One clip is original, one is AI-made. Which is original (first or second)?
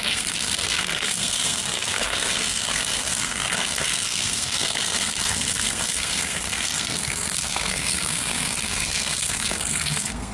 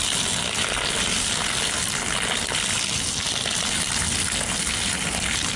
second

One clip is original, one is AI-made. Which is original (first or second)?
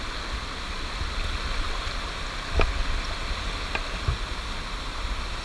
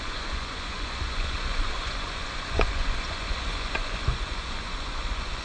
first